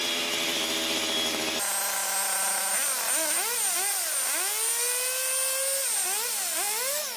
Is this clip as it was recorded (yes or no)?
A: yes